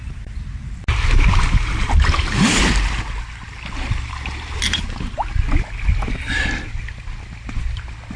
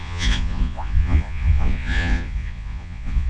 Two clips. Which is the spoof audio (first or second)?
second